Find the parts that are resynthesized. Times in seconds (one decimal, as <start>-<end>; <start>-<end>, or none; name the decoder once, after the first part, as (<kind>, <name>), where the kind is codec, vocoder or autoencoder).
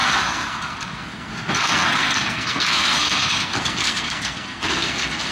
0.0-5.3 (codec, SNAC)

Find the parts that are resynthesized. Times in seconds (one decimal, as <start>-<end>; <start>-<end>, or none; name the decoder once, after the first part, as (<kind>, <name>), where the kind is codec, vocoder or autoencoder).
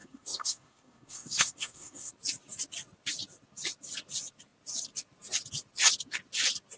0.0-2.1 (codec, SNAC)